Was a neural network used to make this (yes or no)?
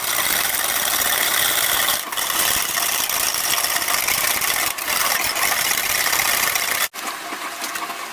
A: no